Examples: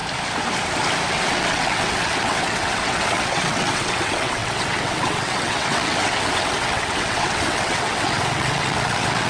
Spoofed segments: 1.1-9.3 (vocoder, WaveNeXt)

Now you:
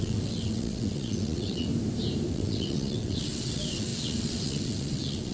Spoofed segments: 0.0-1.7 (vocoder, WaveNeXt); 2.3-5.3

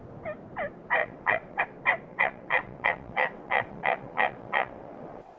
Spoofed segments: 1.0-1.6 (vocoder, WaveNeXt); 2.1-5.4

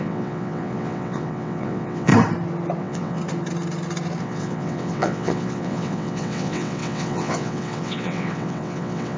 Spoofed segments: 0.0-2.1 (vocoder, WaveNeXt); 2.8-3.2; 4.2-9.2

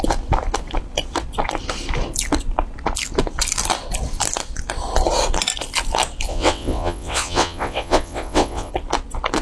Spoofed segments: 6.3-8.7 (vocoder, WaveNeXt)

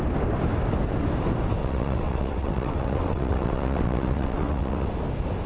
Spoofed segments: 1.6-4.9 (vocoder, WaveNeXt)

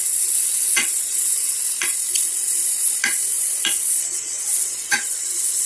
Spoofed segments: 0.0-1.6 (vocoder, WaveNeXt); 3.7-5.7

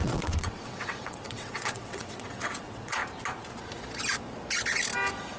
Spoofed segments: 0.0-3.0 (vocoder, WaveNeXt)